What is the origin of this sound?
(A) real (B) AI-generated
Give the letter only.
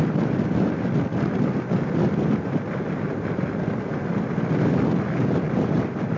A